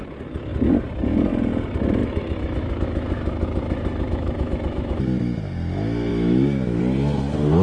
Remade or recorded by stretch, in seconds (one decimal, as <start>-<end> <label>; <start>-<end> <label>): 0.0-2.0 recorded; 2.0-5.0 remade; 5.0-6.1 recorded; 6.1-6.8 remade; 6.8-7.6 recorded